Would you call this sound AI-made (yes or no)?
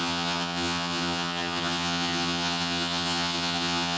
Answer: yes